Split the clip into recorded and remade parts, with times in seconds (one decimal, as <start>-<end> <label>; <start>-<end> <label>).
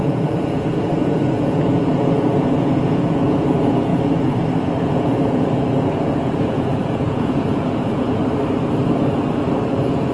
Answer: 0.0-3.9 remade; 3.9-4.8 recorded; 4.8-8.2 remade; 8.2-8.8 recorded; 8.8-10.1 remade